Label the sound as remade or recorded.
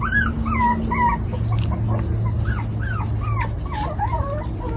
recorded